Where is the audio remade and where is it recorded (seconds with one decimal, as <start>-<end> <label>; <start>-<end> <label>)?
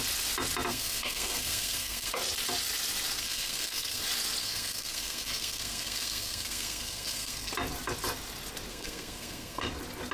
0.0-0.7 recorded; 0.7-2.1 remade; 2.1-3.2 recorded; 3.2-4.0 remade; 4.0-4.4 recorded; 4.4-7.5 remade; 7.5-8.7 recorded; 8.7-9.7 remade; 9.7-10.1 recorded